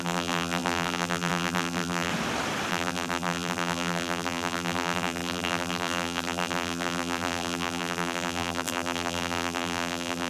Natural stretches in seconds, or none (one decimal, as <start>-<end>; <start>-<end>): 2.1-2.7